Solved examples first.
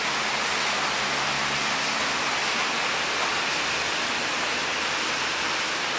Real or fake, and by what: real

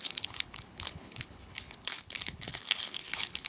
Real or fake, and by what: fake, codec, HILCodec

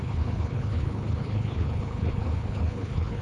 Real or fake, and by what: fake, codec, HILCodec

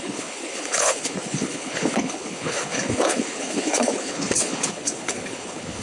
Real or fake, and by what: fake, codec, HILCodec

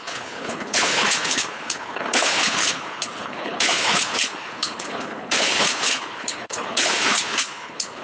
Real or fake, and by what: fake, codec, HILCodec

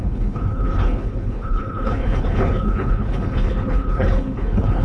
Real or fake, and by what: fake, codec, HILCodec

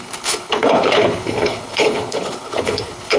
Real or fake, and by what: fake, codec, HILCodec